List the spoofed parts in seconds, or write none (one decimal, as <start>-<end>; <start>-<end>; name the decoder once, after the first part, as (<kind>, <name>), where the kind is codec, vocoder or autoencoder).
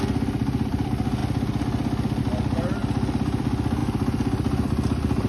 none